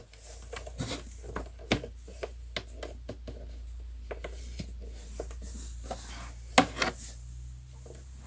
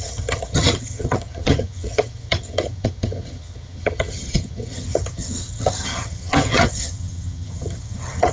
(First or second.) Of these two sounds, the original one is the first